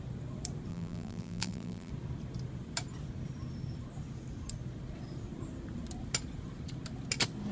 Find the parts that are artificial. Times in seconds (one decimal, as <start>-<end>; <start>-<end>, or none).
0.7-1.9